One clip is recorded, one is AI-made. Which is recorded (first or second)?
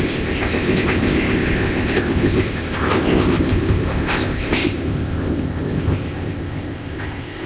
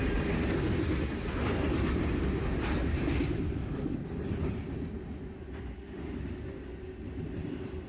second